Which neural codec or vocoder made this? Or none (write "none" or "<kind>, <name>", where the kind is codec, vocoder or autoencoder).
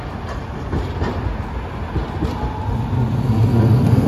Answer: none